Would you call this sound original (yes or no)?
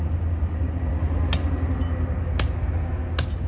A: yes